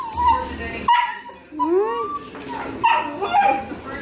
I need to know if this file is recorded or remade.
recorded